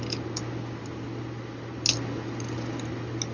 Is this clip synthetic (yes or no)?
no